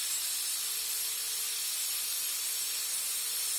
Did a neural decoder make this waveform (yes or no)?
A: no